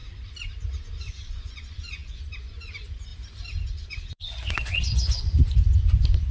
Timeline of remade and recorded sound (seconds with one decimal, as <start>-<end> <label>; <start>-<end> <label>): 0.0-0.8 recorded; 0.8-3.1 remade; 3.1-3.7 recorded; 3.7-6.3 remade